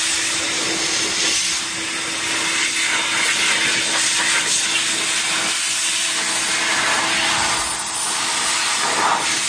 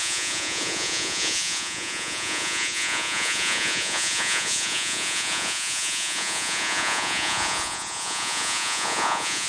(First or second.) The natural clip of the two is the first